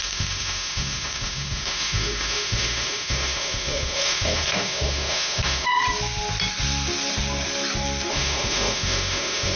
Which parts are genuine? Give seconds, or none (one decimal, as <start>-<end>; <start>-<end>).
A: 5.7-8.1